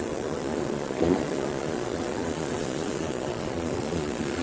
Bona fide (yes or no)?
no